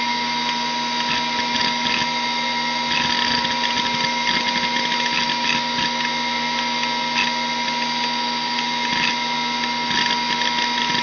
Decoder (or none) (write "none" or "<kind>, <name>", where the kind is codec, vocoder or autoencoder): none